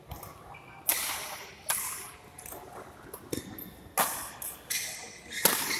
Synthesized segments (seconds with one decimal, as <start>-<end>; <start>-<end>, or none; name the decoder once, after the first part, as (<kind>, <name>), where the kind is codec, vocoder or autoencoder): none